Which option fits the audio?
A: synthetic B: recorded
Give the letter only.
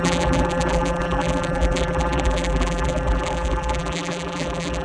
A